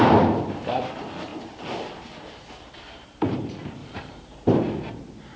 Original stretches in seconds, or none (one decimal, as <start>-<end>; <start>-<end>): 0.0-3.8; 4.6-5.4